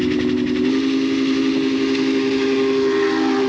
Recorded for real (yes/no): yes